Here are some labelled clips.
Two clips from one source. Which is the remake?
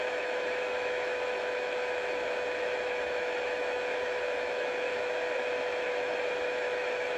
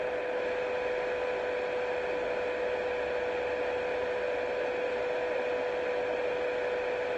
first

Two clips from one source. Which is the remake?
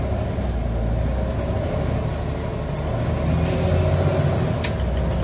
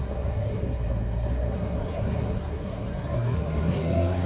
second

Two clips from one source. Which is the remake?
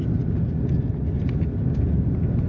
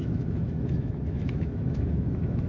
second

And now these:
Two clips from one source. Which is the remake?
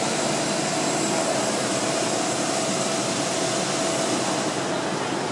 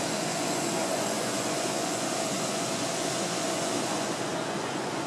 second